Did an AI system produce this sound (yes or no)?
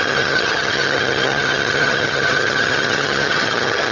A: yes